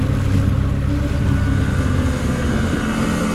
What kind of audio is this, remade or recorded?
recorded